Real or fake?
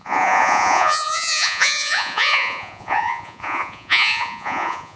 fake